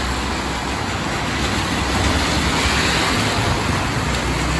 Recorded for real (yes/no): yes